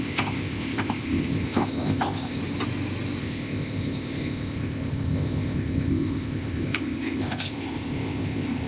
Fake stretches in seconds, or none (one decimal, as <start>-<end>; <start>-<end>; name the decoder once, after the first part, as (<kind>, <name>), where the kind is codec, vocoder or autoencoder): 0.0-2.4 (codec, ZipCodec); 3.2-8.7